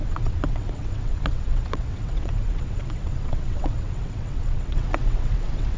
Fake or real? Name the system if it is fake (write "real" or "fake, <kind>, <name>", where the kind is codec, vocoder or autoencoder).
fake, vocoder, WaveNeXt